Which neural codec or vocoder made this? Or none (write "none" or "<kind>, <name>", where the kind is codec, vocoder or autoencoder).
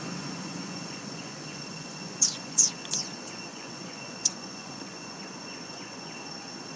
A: vocoder, Vocos